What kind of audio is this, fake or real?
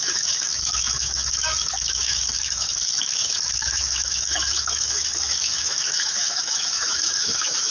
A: fake